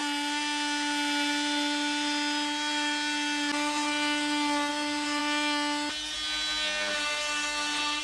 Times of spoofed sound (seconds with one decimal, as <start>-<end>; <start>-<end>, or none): none